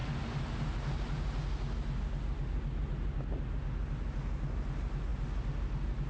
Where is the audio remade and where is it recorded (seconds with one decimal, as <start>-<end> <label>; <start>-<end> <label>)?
0.0-6.1 recorded